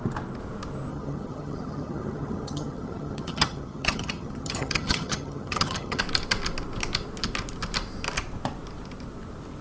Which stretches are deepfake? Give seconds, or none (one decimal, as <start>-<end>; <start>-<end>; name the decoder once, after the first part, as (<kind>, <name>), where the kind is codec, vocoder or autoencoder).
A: 0.9-6.0 (vocoder, HiFi-GAN)